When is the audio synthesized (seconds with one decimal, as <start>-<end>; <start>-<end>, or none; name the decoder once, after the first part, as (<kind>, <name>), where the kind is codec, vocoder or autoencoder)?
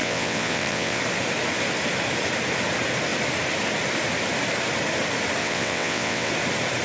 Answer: 0.0-1.0 (vocoder, WaveNeXt); 5.4-6.3